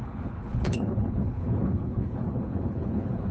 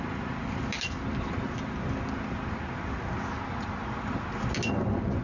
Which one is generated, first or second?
first